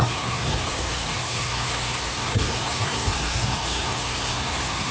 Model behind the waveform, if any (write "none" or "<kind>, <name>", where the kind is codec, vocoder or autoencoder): codec, SNAC